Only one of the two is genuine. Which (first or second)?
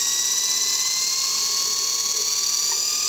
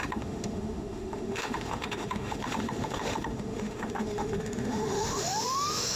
first